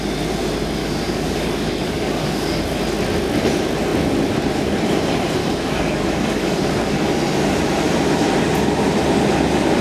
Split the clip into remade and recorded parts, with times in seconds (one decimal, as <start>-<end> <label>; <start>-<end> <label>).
0.0-0.8 recorded; 0.8-2.6 remade; 2.6-5.4 recorded; 5.4-7.1 remade; 7.1-9.8 recorded